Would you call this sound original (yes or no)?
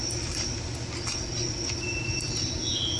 yes